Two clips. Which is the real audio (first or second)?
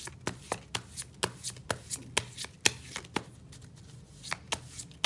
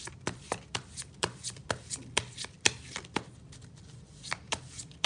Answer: first